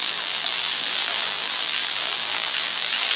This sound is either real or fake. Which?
fake